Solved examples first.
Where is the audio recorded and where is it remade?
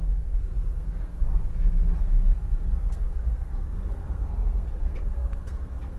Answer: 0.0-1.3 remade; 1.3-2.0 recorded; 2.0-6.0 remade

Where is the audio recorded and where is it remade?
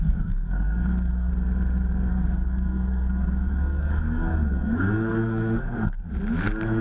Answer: 0.0-1.3 remade; 1.3-2.1 recorded; 2.1-6.0 remade; 6.0-6.8 recorded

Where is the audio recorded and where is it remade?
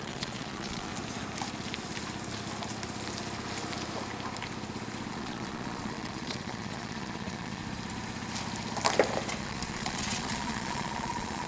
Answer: 0.0-0.9 remade; 0.9-5.1 recorded; 5.1-7.6 remade; 7.6-9.4 recorded; 9.4-11.5 remade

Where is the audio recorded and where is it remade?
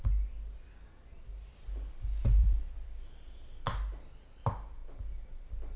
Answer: 0.0-2.4 recorded; 2.4-3.0 remade; 3.0-4.8 recorded; 4.8-5.8 remade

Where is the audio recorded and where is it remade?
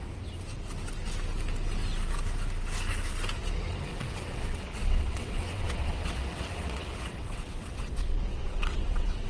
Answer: 0.0-3.9 recorded; 3.9-9.3 remade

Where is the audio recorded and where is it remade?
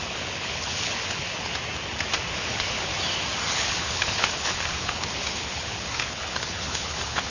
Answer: 0.0-1.5 remade; 1.5-2.3 recorded; 2.3-2.9 remade; 2.9-3.5 recorded; 3.5-7.3 remade